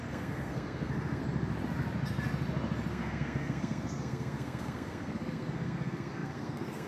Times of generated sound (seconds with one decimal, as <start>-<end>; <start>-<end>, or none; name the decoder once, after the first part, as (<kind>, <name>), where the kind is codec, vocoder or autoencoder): 0.0-1.2 (codec, SNAC); 2.9-6.9